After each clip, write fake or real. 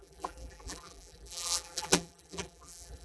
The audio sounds fake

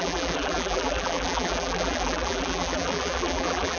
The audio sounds fake